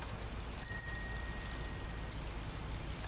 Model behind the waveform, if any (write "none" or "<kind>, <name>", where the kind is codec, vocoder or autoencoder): none